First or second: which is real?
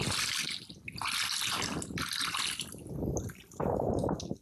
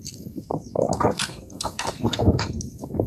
first